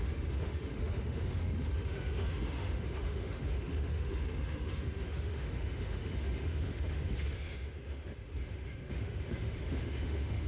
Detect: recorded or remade remade